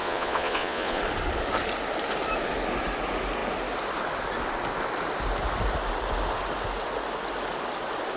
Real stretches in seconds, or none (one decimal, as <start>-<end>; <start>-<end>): 1.0-8.2